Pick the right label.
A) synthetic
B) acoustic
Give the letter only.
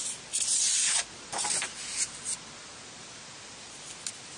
B